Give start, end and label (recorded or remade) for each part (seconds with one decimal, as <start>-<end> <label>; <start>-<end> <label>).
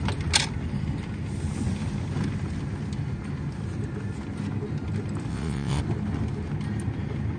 0.0-5.3 recorded; 5.3-5.8 remade; 5.8-7.4 recorded